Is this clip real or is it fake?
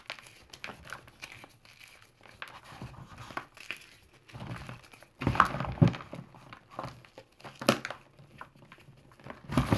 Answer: real